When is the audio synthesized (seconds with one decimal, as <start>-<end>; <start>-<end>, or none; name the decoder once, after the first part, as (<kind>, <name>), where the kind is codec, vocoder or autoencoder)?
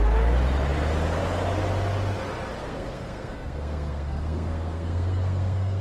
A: 2.6-5.8 (codec, SNAC)